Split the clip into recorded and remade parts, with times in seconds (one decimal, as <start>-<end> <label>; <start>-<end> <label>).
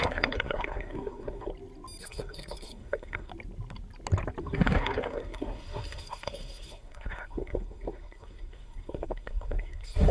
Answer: 0.0-1.5 remade; 1.5-2.0 recorded; 2.0-3.3 remade; 3.3-4.4 recorded; 4.4-10.1 remade